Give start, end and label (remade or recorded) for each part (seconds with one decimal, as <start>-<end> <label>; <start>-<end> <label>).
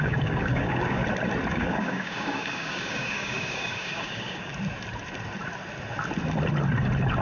0.0-1.0 remade; 1.0-1.5 recorded; 1.5-4.5 remade; 4.5-7.2 recorded